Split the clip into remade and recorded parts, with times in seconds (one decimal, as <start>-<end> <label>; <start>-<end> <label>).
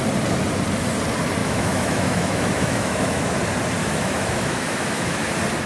0.0-1.4 recorded; 1.4-3.4 remade; 3.4-3.8 recorded; 3.8-5.3 remade; 5.3-5.7 recorded